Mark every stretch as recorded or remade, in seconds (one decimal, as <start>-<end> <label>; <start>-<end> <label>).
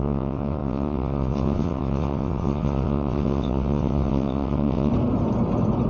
0.0-4.9 remade; 4.9-5.9 recorded